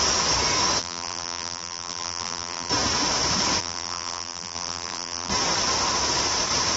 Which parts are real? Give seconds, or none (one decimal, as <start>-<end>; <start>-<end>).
0.0-0.8; 2.7-3.6; 5.3-6.8